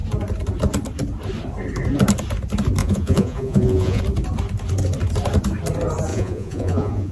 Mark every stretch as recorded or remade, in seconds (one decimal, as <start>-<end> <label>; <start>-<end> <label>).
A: 0.0-2.8 recorded; 2.8-4.0 remade; 4.0-6.1 recorded; 6.1-7.1 remade